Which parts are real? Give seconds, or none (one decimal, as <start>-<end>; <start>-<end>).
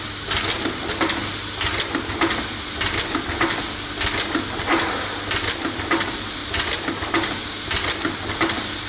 0.0-8.9